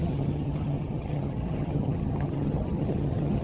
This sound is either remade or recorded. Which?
remade